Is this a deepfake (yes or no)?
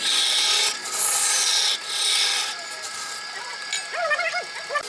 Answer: no